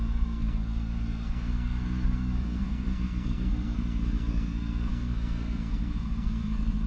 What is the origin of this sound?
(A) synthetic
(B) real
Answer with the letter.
A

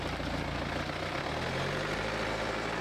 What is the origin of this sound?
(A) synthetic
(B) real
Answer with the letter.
B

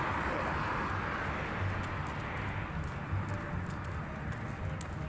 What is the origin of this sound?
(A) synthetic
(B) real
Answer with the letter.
B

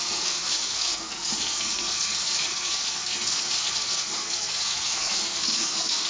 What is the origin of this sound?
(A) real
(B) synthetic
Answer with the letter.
B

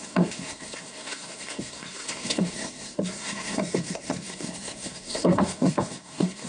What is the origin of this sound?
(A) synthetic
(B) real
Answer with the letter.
A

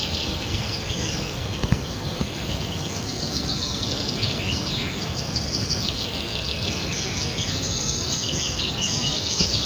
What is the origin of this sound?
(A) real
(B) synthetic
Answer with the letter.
B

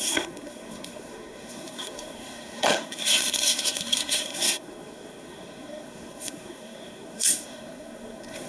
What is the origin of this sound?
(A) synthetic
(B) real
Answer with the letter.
A